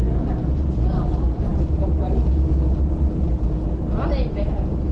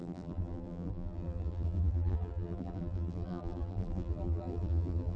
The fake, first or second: second